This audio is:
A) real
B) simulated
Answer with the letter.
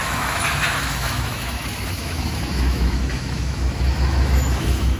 B